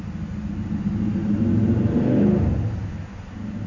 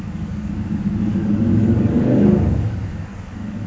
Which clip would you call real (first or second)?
first